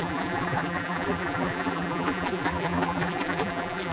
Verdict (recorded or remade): remade